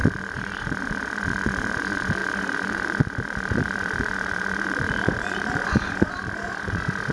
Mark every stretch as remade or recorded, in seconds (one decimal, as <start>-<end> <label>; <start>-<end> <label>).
0.0-7.1 remade